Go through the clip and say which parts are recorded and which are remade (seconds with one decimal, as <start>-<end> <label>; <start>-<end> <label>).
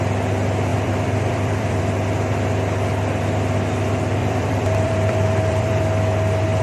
0.0-0.7 recorded; 0.7-1.8 remade; 1.8-4.2 recorded; 4.2-5.8 remade; 5.8-6.6 recorded